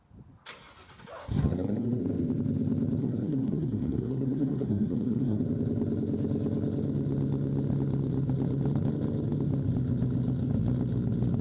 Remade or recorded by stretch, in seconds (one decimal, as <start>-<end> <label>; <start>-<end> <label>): 0.0-1.2 recorded; 1.2-2.0 remade; 2.0-3.0 recorded; 3.0-5.4 remade; 5.4-11.4 recorded